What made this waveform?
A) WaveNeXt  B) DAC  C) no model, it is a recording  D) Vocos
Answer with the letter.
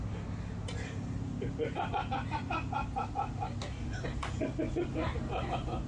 C